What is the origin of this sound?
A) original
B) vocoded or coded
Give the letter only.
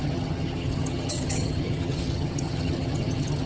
B